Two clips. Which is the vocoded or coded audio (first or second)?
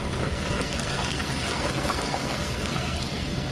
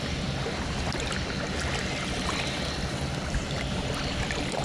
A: first